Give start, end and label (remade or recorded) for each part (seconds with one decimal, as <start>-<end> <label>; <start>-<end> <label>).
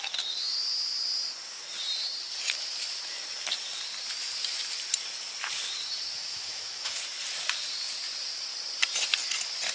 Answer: 0.0-6.2 recorded; 6.2-7.0 remade; 7.0-9.7 recorded